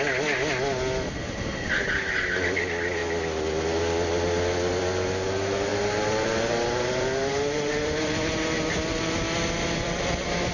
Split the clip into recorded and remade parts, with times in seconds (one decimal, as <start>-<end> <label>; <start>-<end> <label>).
0.0-5.7 recorded; 5.7-8.7 remade; 8.7-10.5 recorded